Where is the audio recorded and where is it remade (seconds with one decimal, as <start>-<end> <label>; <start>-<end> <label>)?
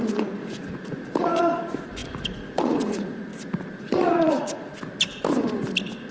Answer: 0.0-3.3 remade; 3.3-3.8 recorded; 3.8-4.7 remade; 4.7-6.1 recorded